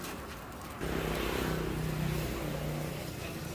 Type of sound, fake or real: real